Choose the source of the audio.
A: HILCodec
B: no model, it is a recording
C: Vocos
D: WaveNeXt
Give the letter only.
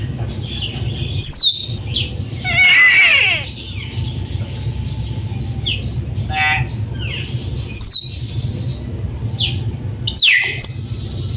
B